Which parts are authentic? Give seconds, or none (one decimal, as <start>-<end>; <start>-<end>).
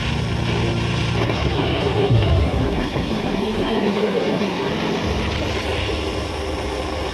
0.0-1.2; 4.7-7.1